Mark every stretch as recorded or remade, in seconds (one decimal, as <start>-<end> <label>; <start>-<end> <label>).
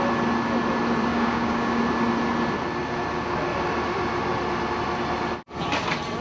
0.0-1.1 recorded; 1.1-1.8 remade; 1.8-6.2 recorded